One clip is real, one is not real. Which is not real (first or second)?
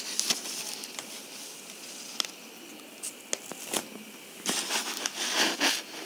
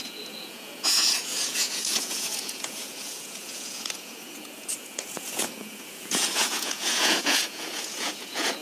second